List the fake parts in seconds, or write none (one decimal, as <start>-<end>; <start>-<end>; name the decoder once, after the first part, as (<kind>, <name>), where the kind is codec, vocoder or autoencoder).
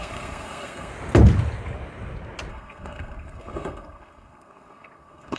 0.0-0.9 (codec, SNAC); 2.5-5.4